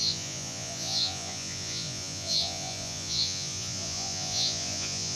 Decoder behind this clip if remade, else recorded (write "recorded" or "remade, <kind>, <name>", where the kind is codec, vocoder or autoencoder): remade, vocoder, Vocos